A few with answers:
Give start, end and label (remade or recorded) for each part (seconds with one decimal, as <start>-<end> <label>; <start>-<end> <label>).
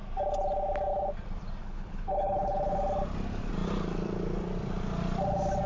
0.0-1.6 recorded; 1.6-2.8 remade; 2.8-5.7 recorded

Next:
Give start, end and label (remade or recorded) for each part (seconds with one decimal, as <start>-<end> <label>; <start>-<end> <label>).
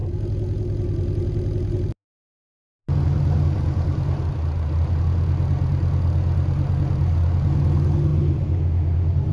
0.0-9.3 recorded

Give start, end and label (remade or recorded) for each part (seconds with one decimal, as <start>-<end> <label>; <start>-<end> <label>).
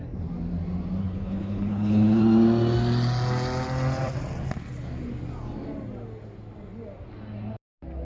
0.0-1.0 recorded; 1.0-2.2 remade; 2.2-8.0 recorded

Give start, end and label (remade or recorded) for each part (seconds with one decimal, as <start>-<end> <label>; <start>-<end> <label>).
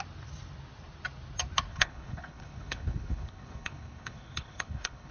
0.0-1.7 recorded; 1.7-5.1 remade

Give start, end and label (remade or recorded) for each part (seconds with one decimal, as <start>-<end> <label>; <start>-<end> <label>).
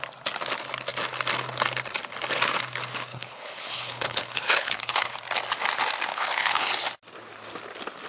0.0-3.1 recorded; 3.1-5.1 remade; 5.1-6.1 recorded; 6.1-6.7 remade; 6.7-8.1 recorded